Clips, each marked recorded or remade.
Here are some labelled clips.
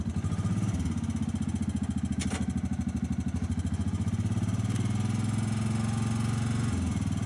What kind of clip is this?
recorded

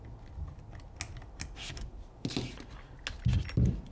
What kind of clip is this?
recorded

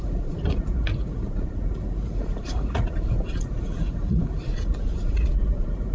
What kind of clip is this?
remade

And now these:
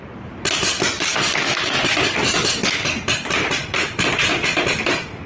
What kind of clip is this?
recorded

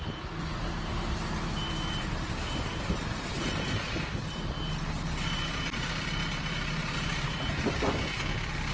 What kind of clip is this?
remade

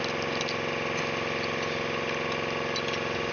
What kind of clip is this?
recorded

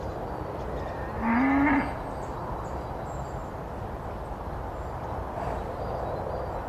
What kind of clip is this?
recorded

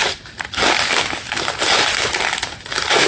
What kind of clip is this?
recorded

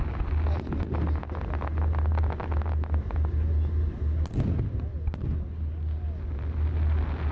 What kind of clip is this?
recorded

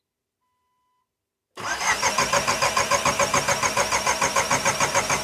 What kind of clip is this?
recorded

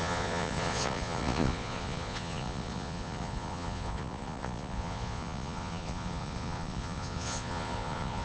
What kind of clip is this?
remade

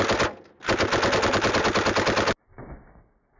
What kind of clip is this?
recorded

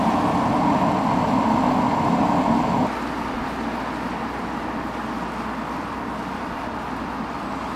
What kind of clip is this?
recorded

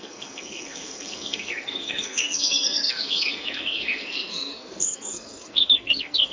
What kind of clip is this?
remade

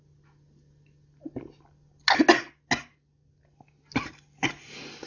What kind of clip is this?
recorded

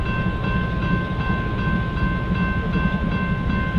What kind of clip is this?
recorded